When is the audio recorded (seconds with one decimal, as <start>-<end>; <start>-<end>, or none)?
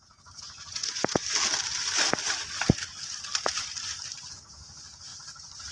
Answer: 1.2-4.3; 5.1-5.7